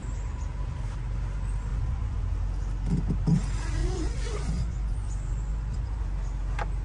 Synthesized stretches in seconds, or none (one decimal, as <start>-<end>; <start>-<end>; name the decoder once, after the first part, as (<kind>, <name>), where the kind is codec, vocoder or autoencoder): 1.7-2.2 (vocoder, Vocos); 3.8-6.0